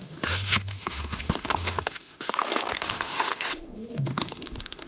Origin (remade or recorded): remade